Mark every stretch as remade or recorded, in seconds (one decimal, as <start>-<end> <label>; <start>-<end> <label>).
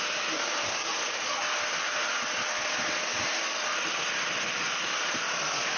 0.0-0.7 recorded; 0.7-1.4 remade; 1.4-5.8 recorded